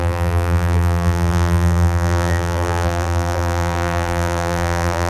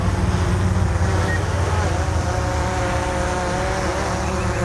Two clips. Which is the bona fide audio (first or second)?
second